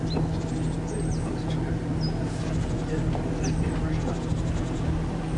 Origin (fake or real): real